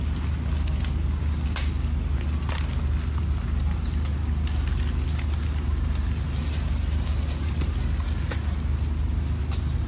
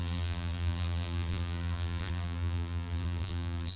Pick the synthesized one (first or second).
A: second